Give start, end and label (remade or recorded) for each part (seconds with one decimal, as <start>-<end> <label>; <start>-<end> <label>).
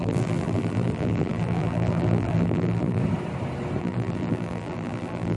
0.0-3.0 remade; 3.0-3.8 recorded; 3.8-5.4 remade